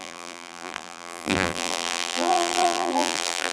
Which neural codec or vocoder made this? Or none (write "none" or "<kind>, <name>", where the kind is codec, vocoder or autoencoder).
vocoder, BigVGAN v2